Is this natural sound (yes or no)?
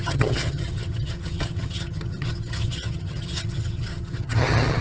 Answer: no